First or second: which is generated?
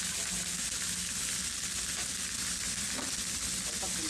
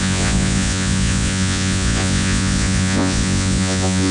second